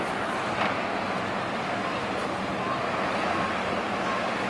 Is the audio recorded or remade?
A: recorded